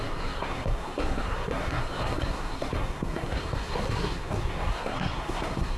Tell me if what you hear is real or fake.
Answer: fake